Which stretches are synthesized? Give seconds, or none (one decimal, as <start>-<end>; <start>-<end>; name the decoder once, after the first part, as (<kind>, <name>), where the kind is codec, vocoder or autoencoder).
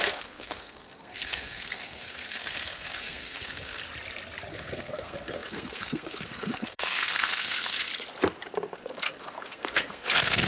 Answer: 0.0-3.8 (codec, SNAC); 4.5-7.9; 8.8-10.5